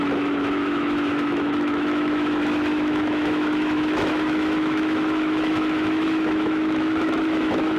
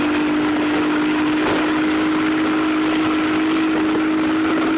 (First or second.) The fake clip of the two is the first